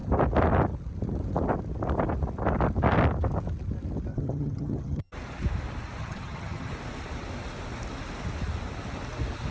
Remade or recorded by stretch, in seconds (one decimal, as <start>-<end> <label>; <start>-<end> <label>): 0.0-4.1 recorded; 4.1-5.1 remade; 5.1-6.0 recorded; 6.0-6.7 remade; 6.7-9.5 recorded